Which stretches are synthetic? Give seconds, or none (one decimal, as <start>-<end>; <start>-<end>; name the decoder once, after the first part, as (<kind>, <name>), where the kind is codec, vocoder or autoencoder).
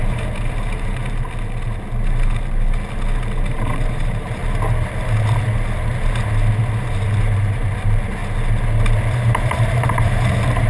0.0-1.0 (vocoder, BigVGAN v2); 3.5-4.4; 6.9-8.2; 9.0-10.7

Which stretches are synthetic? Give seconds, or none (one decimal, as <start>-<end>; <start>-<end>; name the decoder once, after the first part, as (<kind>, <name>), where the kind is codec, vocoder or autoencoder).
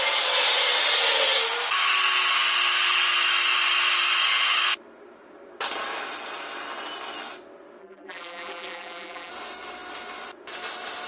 7.8-9.3 (vocoder, BigVGAN v2)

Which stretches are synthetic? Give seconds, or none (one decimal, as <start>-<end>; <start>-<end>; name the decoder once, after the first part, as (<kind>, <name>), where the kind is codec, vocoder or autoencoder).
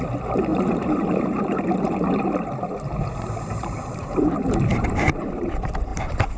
0.5-4.3 (vocoder, BigVGAN v2); 4.7-5.3; 5.9-6.4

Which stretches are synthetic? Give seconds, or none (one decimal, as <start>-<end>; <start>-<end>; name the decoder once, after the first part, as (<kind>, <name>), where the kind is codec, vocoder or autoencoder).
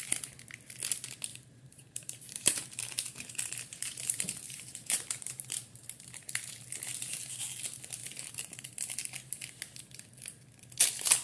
1.3-6.5 (vocoder, BigVGAN v2); 8.0-8.7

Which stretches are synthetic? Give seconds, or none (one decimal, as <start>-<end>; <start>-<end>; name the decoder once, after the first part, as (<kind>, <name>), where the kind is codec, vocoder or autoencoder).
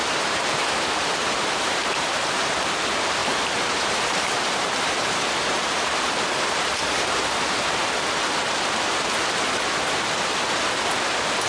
0.0-2.1 (vocoder, BigVGAN v2); 3.2-8.3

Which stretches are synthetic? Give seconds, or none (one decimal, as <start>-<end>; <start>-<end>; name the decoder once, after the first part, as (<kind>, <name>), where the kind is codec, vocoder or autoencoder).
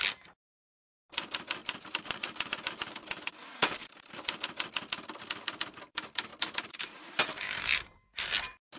1.6-3.3 (vocoder, BigVGAN v2); 3.8-4.4; 6.3-8.3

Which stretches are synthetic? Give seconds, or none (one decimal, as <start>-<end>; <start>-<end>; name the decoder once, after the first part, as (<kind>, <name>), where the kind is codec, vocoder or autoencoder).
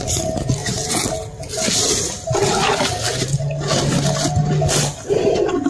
none